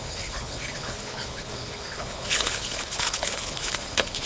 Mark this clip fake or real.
fake